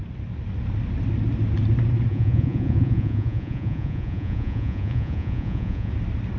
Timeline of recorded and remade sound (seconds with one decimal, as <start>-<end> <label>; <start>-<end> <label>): 0.0-2.1 recorded; 2.1-5.9 remade; 5.9-6.4 recorded